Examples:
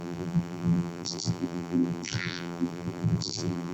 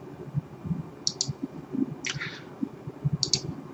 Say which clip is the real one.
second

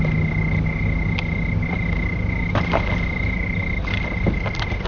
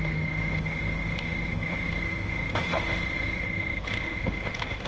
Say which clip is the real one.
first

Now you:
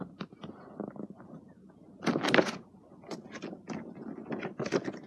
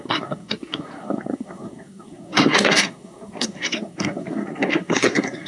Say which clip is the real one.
first